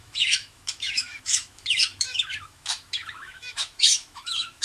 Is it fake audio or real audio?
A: fake